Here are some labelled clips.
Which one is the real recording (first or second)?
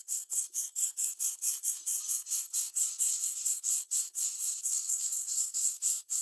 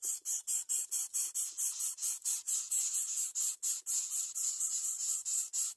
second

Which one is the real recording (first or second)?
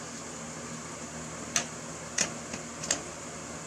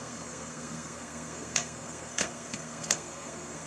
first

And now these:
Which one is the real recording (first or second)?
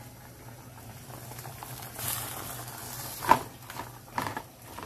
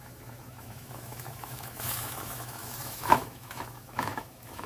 first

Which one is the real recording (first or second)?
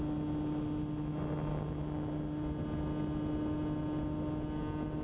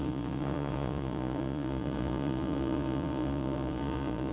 first